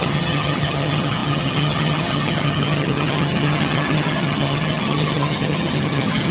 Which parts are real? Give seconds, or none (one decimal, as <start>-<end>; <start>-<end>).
none